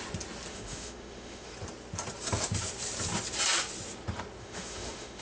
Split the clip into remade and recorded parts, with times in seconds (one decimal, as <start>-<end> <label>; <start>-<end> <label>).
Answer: 0.0-0.5 recorded; 0.5-1.5 remade; 1.5-4.4 recorded; 4.4-5.2 remade